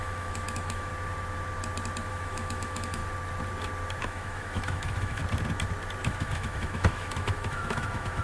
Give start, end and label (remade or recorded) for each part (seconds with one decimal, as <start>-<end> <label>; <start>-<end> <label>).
0.0-0.9 remade; 0.9-2.1 recorded; 2.1-3.0 remade; 3.0-4.0 recorded; 4.0-5.2 remade; 5.2-6.0 recorded; 6.0-8.2 remade